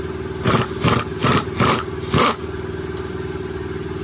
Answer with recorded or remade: recorded